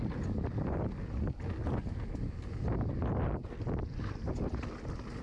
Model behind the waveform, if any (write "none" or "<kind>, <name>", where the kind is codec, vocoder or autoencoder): none